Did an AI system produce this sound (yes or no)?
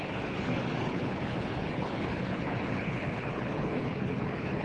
yes